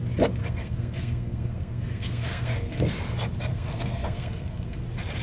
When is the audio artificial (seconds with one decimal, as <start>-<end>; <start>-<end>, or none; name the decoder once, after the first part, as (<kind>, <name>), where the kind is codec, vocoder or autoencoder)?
0.4-2.9 (codec, SNAC); 3.5-4.8